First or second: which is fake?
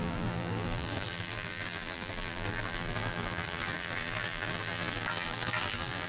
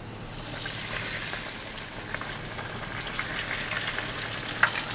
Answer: first